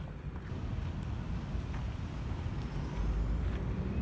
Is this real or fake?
real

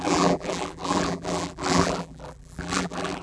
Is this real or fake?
fake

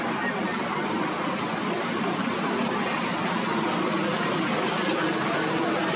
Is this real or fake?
real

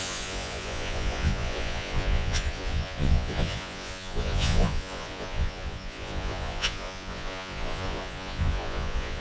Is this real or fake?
fake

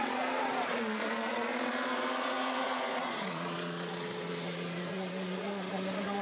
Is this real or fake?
fake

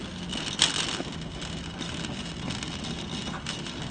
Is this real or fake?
real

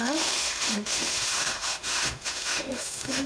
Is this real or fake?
fake